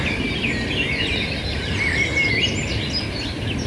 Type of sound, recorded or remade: recorded